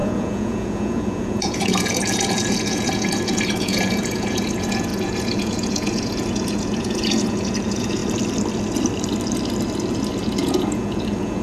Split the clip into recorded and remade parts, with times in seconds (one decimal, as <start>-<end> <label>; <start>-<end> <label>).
0.0-8.0 remade; 8.0-10.2 recorded; 10.2-11.4 remade